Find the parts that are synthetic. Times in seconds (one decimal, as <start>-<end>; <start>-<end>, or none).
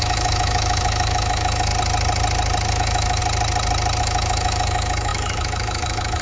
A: 0.0-1.7; 2.7-3.2; 4.0-6.2